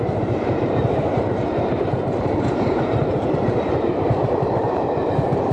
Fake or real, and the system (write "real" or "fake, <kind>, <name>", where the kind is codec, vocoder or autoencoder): fake, vocoder, BigVGAN v2